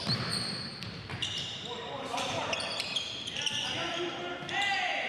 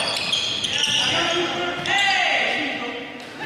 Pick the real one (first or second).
second